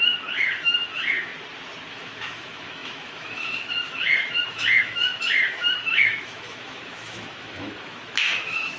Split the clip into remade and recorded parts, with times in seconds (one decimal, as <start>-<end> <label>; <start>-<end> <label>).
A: 0.0-1.3 remade; 1.3-1.9 recorded; 1.9-8.8 remade